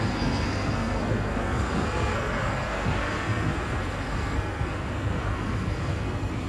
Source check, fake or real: fake